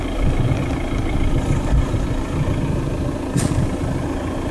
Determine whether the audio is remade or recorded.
recorded